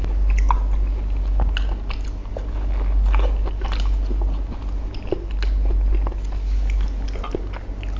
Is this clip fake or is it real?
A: real